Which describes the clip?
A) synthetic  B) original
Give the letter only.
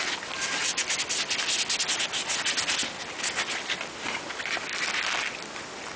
B